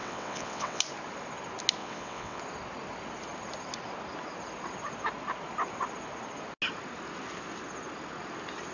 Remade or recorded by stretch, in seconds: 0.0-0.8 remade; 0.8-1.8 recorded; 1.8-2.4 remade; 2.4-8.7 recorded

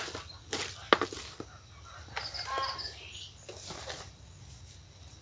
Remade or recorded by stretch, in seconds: 0.0-5.2 recorded

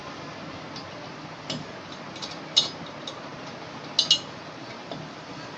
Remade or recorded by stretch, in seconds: 0.0-5.6 recorded